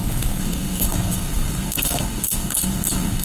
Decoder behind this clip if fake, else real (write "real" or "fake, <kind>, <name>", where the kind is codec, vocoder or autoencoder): fake, codec, SNAC